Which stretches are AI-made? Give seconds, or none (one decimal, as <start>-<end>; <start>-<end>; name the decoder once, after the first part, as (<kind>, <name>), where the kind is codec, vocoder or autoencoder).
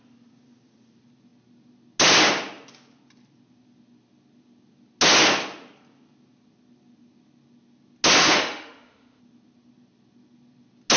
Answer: 8.2-9.2 (autoencoder, DAC-VAE)